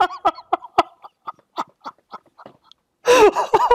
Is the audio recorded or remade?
recorded